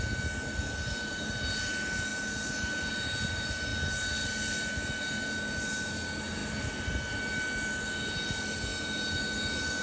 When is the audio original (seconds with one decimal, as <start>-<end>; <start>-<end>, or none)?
0.0-9.8